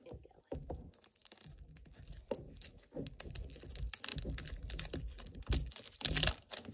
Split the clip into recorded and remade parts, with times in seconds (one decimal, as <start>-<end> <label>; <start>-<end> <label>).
0.0-6.7 recorded